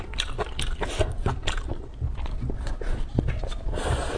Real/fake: real